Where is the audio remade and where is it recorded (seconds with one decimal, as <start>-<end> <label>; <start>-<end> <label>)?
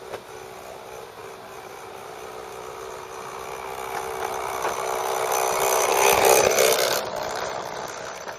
0.0-5.9 recorded; 5.9-8.4 remade